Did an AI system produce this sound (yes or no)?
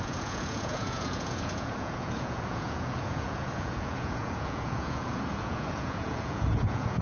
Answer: yes